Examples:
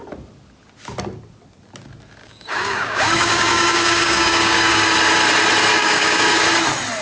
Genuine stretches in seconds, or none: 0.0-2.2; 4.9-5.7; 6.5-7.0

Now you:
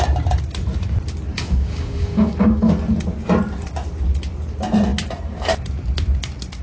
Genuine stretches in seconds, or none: 0.0-1.3; 2.7-6.6